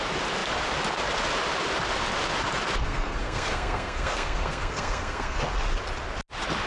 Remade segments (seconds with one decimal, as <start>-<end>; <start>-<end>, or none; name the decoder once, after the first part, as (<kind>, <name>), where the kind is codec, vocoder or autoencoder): 2.8-5.4 (codec, SNAC)

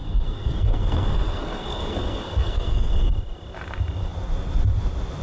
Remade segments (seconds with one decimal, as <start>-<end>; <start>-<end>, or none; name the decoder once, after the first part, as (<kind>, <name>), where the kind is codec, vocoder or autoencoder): 0.0-3.1 (codec, SNAC)

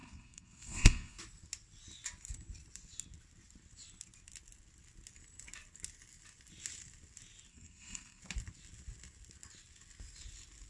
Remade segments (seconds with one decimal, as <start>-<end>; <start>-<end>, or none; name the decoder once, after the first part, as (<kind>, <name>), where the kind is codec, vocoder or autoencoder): 0.0-1.2 (codec, SNAC); 7.5-8.2

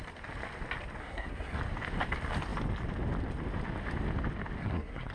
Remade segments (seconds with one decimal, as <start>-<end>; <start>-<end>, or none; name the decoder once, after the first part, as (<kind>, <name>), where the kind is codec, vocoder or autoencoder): 1.0-1.6 (codec, SNAC); 4.6-5.1

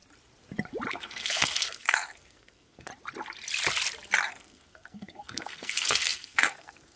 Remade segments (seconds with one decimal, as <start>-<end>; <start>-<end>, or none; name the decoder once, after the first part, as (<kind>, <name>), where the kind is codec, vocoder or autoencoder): 0.9-2.9 (codec, SNAC); 4.3-7.0